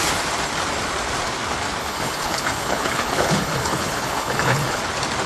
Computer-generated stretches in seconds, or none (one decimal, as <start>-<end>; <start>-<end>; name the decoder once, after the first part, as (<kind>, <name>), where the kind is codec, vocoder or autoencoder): 1.8-4.8 (codec, HILCodec)